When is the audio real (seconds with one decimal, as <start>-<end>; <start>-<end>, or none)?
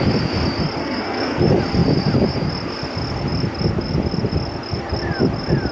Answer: 0.0-0.8; 1.4-5.7